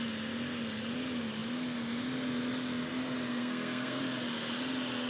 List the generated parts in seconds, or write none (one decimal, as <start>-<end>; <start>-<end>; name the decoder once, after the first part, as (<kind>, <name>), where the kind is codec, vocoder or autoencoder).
3.3-4.0 (codec, SNAC)